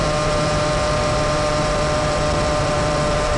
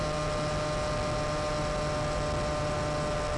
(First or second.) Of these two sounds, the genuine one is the second